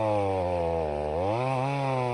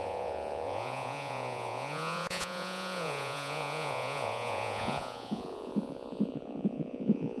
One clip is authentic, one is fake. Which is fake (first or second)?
second